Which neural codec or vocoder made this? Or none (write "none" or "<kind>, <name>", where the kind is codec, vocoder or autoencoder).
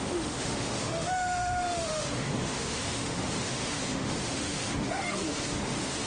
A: autoencoder, DAC-VAE